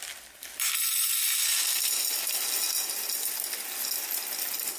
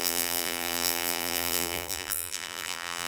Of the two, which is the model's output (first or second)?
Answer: second